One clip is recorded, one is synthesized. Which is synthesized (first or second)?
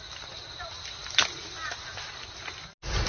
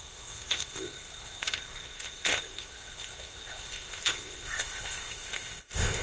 second